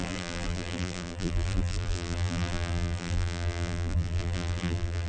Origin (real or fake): fake